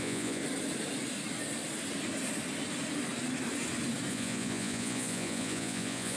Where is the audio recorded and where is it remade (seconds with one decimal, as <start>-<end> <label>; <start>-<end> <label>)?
0.0-0.4 remade; 0.4-4.1 recorded; 4.1-6.2 remade